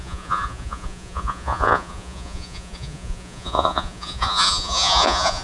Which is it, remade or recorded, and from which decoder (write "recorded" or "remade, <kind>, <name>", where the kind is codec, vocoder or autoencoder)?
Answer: remade, vocoder, Vocos